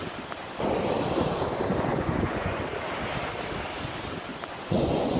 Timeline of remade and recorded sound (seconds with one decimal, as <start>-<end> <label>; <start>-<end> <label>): 0.0-1.9 recorded; 1.9-2.6 remade; 2.6-4.3 recorded; 4.3-5.2 remade